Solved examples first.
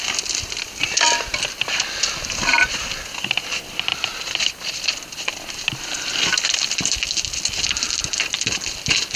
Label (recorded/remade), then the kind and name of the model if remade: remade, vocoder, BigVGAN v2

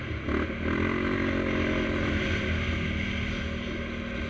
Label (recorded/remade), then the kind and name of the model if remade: recorded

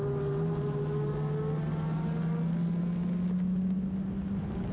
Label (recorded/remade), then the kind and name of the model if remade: recorded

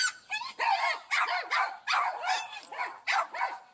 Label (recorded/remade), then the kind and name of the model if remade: recorded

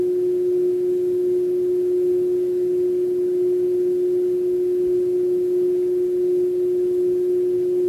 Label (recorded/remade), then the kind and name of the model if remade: recorded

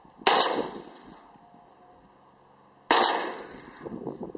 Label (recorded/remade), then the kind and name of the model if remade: recorded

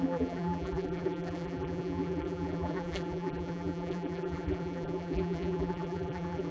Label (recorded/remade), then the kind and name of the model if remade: remade, vocoder, BigVGAN v2